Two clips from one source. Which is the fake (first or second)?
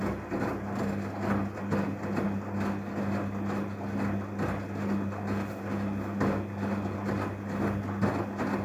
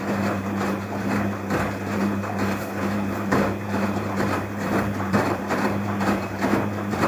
second